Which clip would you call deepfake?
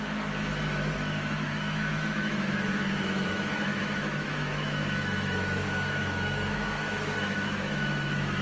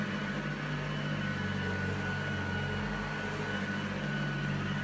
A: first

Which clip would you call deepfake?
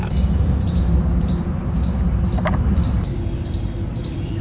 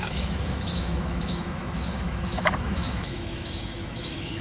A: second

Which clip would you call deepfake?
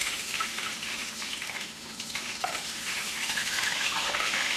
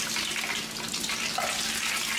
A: first